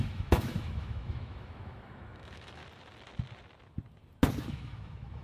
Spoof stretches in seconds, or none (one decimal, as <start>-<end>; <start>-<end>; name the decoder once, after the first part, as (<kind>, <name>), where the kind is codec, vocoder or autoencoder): 0.0-2.6 (autoencoder, DAC-VAE); 4.5-5.2